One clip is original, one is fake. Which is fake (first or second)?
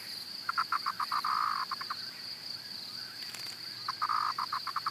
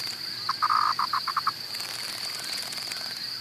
second